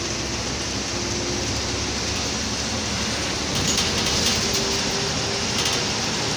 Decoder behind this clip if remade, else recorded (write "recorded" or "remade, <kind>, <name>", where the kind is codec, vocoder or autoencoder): recorded